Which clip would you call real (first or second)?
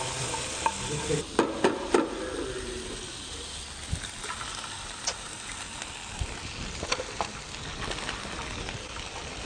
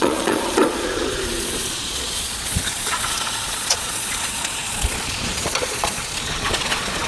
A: first